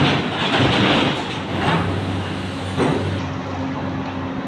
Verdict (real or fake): real